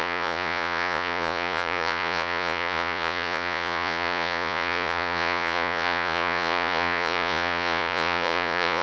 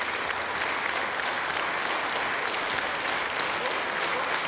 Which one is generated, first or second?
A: first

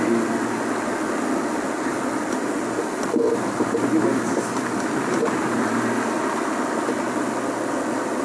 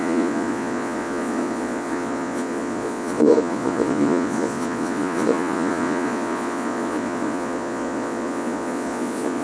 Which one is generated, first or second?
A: second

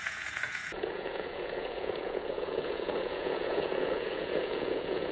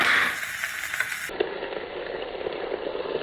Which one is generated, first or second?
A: first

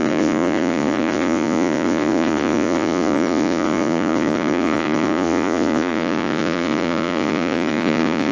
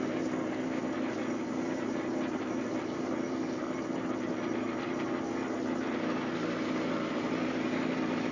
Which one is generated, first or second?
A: first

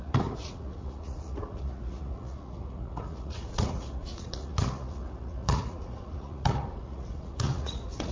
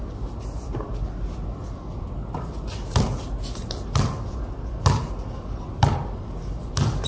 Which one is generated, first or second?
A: first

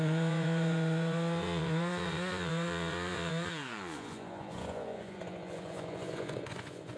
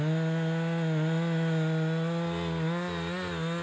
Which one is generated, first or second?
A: first